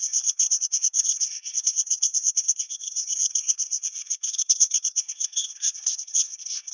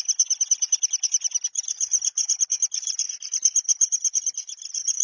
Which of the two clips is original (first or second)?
second